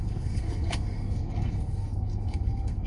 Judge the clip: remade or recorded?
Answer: remade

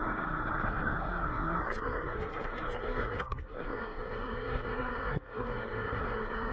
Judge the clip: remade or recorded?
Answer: remade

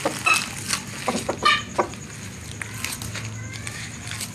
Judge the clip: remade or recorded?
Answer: recorded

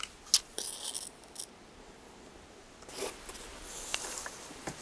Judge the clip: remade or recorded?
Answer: recorded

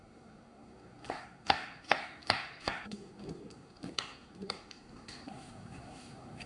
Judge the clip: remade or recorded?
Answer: remade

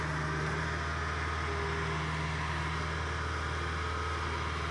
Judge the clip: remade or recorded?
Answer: recorded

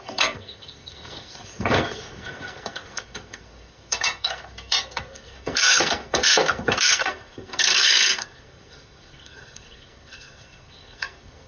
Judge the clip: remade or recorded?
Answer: remade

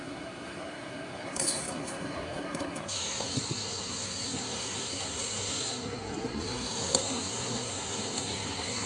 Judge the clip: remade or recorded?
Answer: remade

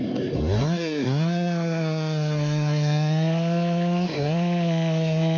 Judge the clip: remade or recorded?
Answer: remade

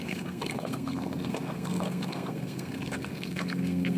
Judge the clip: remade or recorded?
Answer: remade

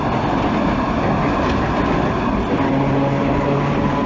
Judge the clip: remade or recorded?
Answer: recorded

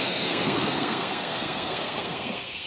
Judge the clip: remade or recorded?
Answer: remade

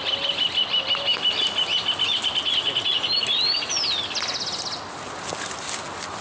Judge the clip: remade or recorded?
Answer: recorded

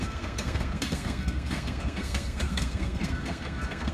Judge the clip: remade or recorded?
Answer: remade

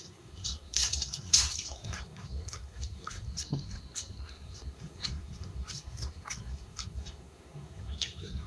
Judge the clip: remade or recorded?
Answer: remade